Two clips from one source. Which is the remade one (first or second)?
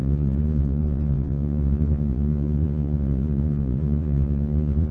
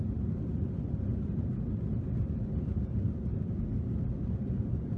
first